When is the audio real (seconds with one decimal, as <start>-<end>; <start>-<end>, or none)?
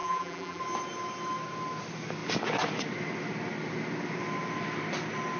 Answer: 0.6-5.4